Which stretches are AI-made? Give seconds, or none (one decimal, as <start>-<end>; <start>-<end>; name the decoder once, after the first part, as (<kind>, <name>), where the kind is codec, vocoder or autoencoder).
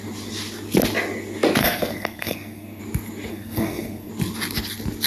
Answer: 1.6-2.8 (codec, SNAC); 3.3-4.1